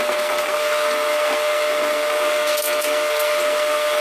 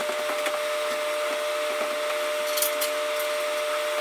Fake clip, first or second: first